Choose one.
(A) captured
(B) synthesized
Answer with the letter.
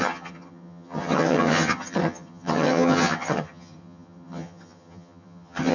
B